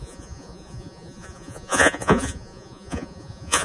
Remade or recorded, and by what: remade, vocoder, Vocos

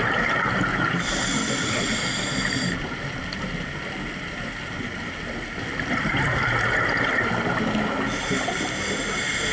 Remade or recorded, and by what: recorded